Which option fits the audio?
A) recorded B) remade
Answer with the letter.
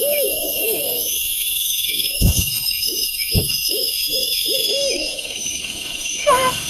B